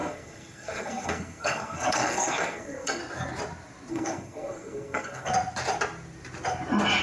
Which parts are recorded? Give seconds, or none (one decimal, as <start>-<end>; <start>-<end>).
3.0-3.9; 5.3-7.0